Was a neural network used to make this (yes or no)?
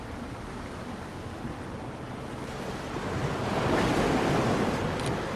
no